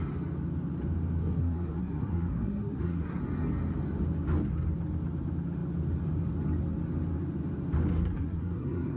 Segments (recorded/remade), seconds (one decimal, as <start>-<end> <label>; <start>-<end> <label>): 0.0-1.2 recorded; 1.2-3.2 remade; 3.2-7.9 recorded; 7.9-9.0 remade